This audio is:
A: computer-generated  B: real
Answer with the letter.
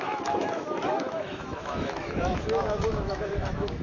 A